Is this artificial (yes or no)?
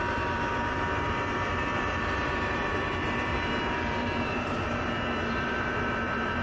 yes